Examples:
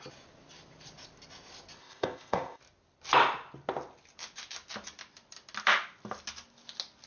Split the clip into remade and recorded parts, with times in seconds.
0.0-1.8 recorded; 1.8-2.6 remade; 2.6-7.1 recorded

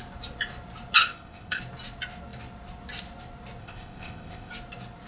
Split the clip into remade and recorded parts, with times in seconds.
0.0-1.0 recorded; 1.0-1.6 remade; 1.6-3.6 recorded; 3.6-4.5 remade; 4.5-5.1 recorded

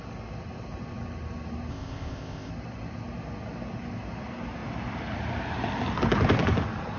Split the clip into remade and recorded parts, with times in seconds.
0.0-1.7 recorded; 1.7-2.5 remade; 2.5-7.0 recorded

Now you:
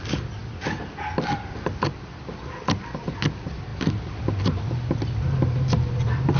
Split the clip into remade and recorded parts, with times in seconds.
0.0-6.4 recorded

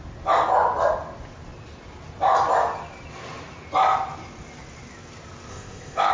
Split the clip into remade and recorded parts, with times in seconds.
0.0-5.5 recorded; 5.5-6.1 remade

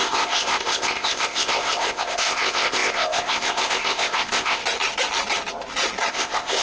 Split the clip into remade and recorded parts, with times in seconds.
0.0-4.6 remade; 4.6-6.1 recorded; 6.1-6.6 remade

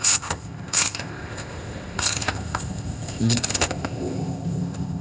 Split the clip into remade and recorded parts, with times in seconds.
0.0-5.0 remade